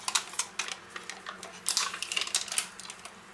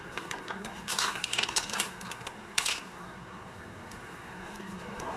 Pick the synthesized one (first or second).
second